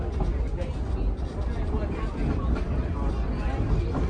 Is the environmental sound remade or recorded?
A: recorded